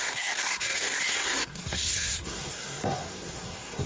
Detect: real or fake fake